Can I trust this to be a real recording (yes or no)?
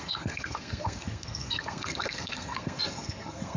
no